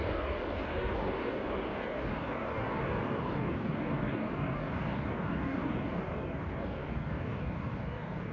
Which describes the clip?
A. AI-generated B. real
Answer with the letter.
A